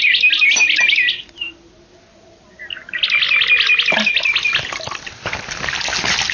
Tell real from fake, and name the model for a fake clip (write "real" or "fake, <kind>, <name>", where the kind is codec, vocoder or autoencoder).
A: real